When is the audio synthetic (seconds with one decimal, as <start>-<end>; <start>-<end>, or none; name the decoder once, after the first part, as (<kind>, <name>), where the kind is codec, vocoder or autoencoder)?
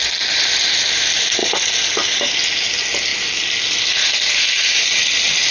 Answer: none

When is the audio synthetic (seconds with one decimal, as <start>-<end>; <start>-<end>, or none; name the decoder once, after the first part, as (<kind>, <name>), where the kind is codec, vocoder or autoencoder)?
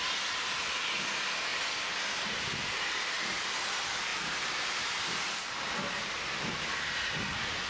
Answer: 1.5-2.9 (vocoder, BigVGAN v2); 4.1-6.2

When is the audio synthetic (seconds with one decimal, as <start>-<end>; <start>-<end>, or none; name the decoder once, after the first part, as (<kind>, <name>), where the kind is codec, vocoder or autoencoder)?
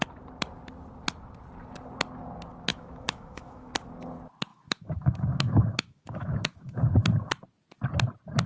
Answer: 2.7-3.7 (autoencoder, DAC-VAE); 4.5-6.8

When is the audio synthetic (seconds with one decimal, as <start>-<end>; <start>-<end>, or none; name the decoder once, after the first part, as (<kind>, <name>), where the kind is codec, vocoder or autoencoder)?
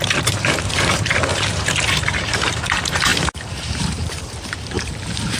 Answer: 0.0-5.4 (vocoder, BigVGAN v2)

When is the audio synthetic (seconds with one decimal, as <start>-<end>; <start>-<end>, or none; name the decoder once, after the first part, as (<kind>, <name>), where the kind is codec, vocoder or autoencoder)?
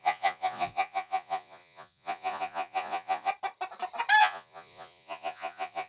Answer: 0.0-3.3 (vocoder, Vocos); 4.2-5.9